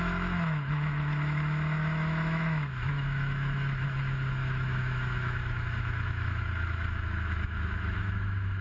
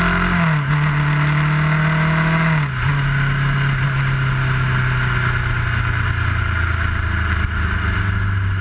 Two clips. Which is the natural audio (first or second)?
second